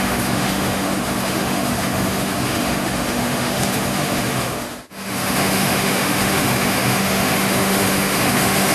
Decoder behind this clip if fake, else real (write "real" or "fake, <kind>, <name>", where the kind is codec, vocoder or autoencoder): fake, autoencoder, DAC-VAE